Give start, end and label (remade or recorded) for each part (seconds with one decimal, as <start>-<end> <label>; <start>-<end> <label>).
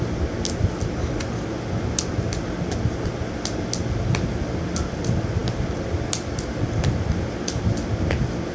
0.0-8.5 recorded